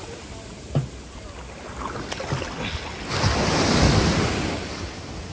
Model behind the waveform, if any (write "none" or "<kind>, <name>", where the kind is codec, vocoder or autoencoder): none